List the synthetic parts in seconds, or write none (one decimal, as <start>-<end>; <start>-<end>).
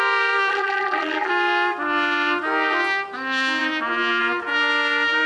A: 0.5-1.3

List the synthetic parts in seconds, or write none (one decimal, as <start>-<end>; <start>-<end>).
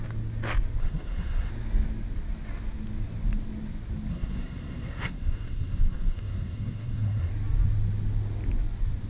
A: 0.8-1.5; 4.1-7.3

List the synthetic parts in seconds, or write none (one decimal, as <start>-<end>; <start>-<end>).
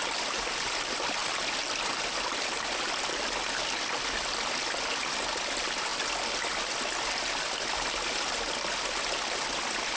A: none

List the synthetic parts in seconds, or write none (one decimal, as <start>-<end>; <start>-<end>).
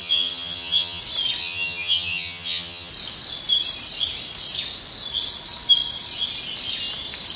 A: 0.0-1.0; 1.4-2.9